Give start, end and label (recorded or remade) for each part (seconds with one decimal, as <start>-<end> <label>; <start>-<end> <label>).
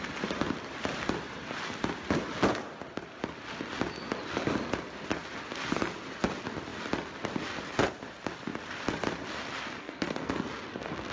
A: 0.0-9.8 recorded; 9.8-10.3 remade; 10.3-11.1 recorded